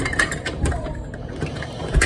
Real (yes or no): no